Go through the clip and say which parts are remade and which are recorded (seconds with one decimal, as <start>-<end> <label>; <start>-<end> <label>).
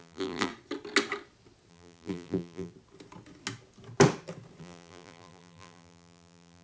0.0-0.5 remade; 0.5-1.7 recorded; 1.7-2.7 remade; 2.7-4.6 recorded; 4.6-6.6 remade